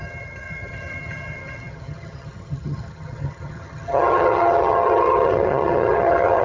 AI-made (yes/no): yes